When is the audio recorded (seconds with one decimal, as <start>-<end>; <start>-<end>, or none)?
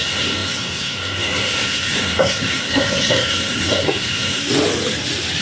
4.4-5.4